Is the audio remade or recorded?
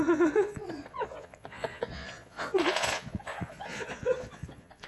remade